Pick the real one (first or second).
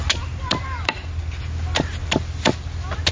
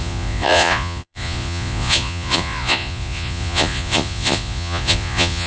first